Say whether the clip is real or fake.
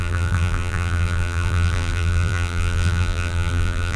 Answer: fake